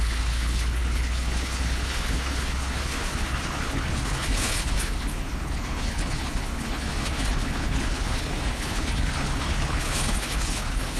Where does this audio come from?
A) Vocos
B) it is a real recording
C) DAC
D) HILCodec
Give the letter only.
D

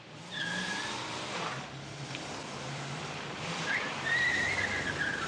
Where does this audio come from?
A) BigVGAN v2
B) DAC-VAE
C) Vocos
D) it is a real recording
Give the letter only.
A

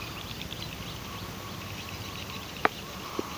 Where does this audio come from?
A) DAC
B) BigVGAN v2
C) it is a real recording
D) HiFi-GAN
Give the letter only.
C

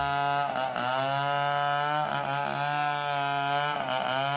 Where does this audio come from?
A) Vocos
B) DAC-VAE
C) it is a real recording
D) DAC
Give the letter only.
C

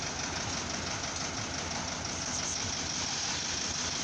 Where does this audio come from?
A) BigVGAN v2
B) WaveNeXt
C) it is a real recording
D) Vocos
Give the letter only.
C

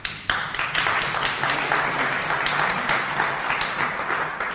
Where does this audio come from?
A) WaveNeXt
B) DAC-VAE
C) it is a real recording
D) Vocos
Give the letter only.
C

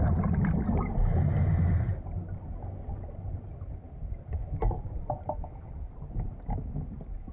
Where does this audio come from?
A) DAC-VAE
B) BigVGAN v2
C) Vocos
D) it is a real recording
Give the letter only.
D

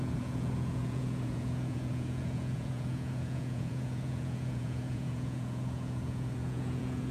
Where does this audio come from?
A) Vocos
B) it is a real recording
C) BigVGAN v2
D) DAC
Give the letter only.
A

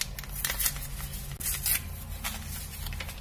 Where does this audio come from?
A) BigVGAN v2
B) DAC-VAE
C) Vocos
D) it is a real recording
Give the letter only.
D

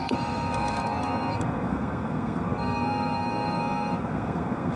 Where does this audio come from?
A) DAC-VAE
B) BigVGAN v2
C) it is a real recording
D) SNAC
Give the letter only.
D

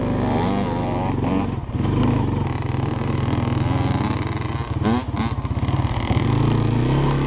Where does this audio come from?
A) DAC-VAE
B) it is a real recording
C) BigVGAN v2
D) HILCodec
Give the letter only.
B